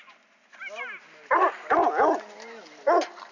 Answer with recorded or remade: recorded